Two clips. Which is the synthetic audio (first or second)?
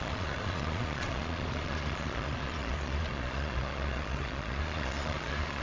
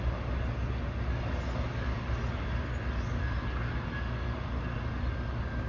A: first